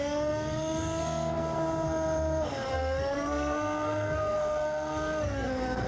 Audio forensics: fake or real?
fake